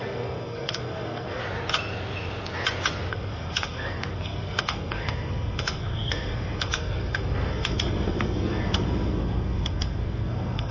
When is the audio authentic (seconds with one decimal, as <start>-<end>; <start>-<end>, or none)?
1.4-3.1